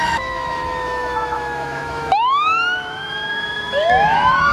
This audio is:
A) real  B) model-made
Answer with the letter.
B